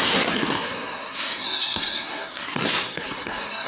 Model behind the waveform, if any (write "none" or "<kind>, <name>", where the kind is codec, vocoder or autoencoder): codec, SNAC